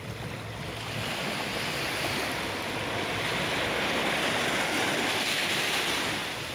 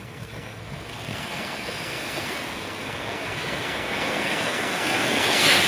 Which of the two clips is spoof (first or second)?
second